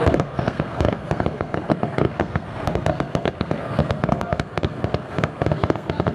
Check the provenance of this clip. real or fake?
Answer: fake